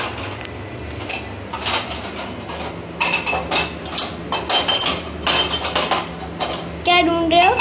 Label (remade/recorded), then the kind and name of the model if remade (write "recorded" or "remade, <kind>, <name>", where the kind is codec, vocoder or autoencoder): recorded